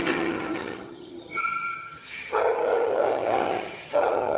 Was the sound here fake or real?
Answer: fake